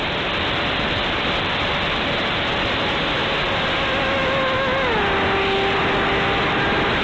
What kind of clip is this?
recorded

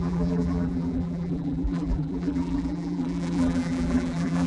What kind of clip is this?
remade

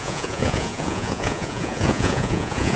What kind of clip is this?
remade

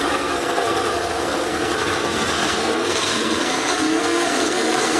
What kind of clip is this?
remade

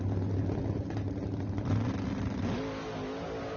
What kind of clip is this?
recorded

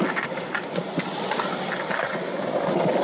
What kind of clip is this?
recorded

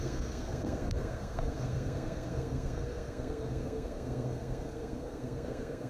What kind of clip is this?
remade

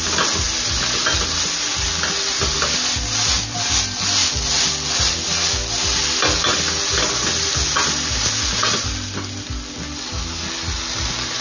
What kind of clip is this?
recorded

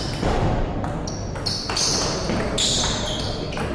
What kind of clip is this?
recorded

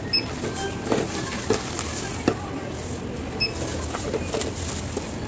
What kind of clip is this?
recorded